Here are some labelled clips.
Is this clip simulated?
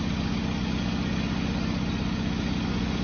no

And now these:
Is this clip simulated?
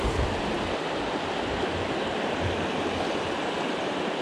no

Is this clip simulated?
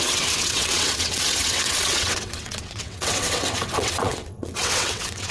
yes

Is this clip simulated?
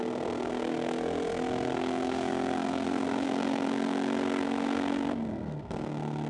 yes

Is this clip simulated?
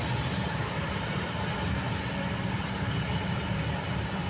no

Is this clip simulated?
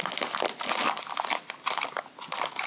no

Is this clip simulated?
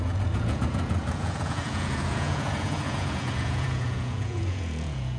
yes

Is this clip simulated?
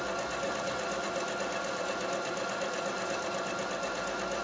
no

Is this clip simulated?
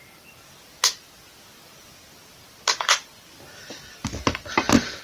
no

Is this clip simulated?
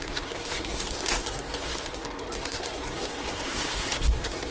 yes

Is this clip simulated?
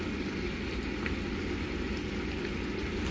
no